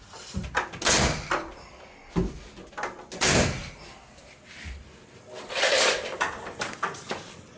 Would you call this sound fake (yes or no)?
no